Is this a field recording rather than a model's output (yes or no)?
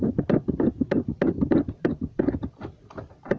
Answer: yes